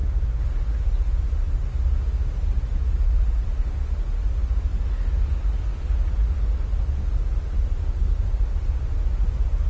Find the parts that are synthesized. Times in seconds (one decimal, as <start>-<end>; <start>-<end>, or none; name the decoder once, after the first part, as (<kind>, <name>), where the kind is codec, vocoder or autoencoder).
none